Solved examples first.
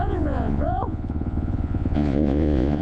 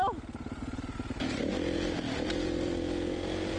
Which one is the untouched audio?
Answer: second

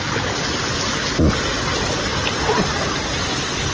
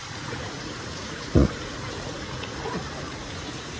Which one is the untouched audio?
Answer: first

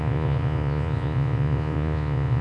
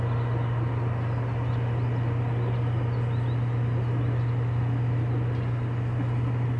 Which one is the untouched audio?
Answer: second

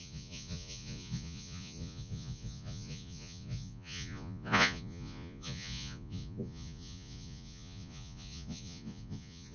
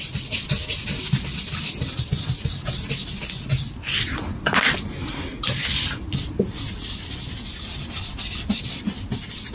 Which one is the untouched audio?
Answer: second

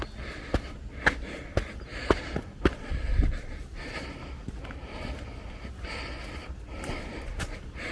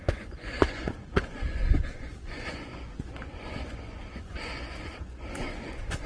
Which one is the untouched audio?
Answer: first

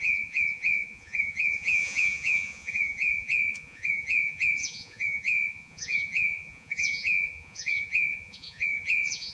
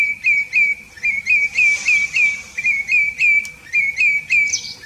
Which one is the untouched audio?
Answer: second